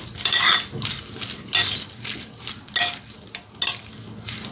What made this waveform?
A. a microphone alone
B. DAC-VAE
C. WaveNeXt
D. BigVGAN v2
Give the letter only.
A